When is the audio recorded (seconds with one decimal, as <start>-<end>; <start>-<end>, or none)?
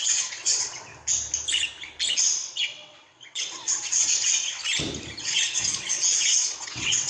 0.9-2.2; 4.6-5.2; 5.7-6.2